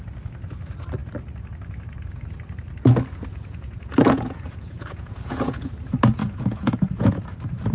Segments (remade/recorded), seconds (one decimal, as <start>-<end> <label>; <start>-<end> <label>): 0.0-3.3 recorded; 3.3-5.7 remade; 5.7-6.2 recorded; 6.2-7.2 remade; 7.2-7.7 recorded